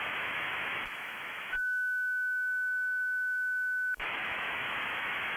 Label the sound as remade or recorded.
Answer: remade